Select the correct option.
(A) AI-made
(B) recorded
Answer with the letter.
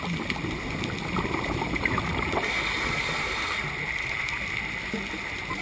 B